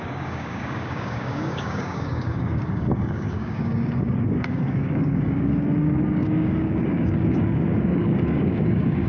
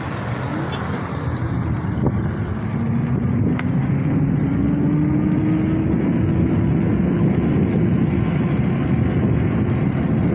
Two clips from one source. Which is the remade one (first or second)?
first